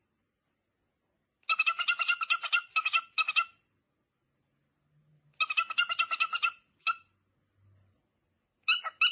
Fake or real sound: real